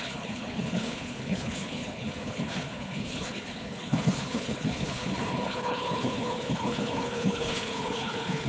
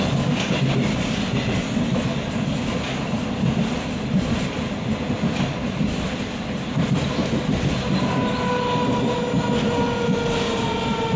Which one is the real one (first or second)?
second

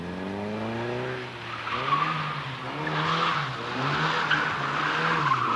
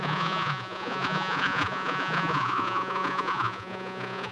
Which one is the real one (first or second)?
first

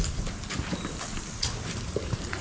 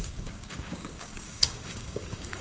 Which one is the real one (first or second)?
first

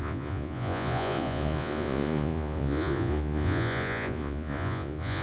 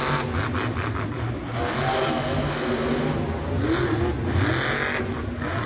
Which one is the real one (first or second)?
second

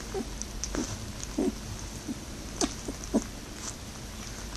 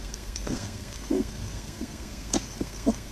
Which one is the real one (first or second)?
first